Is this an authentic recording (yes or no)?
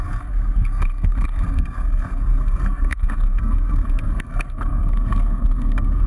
no